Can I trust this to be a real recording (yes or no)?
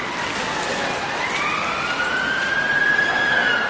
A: yes